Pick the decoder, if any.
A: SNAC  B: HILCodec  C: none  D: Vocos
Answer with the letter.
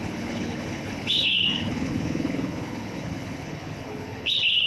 B